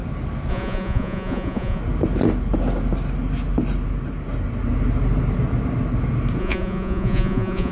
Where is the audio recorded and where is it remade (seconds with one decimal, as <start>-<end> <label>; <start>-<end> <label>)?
0.0-0.5 recorded; 0.5-1.8 remade; 1.8-6.4 recorded; 6.4-7.7 remade